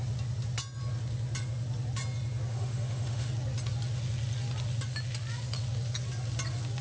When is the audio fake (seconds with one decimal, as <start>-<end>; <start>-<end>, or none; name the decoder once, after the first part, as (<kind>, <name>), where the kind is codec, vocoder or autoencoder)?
2.5-3.3 (autoencoder, DAC-VAE)